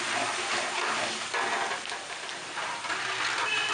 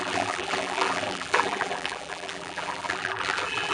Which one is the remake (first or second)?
second